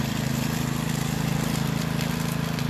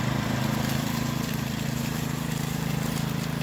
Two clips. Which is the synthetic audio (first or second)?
second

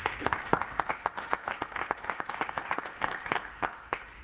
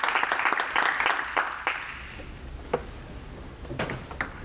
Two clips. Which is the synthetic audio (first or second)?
first